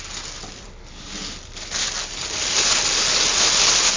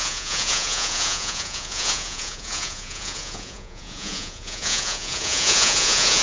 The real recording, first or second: first